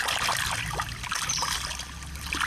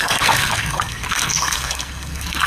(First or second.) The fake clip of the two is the second